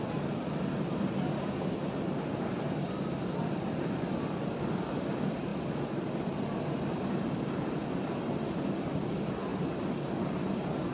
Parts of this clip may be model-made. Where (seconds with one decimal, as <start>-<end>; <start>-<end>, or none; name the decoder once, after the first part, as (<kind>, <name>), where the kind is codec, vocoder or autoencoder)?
none

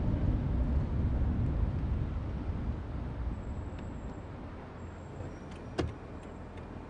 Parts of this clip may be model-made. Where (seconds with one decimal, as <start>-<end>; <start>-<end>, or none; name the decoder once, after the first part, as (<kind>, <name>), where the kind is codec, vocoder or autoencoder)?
none